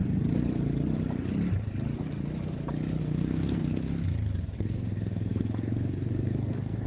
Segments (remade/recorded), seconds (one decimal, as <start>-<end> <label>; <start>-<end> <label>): 0.0-3.0 recorded; 3.0-3.9 remade; 3.9-4.6 recorded; 4.6-6.9 remade